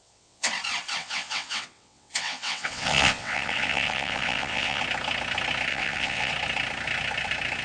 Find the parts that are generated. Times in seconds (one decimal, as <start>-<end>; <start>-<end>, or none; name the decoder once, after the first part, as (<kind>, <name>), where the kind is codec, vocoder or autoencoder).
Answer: 0.0-0.5 (vocoder, WaveNeXt); 1.0-4.8; 5.7-6.3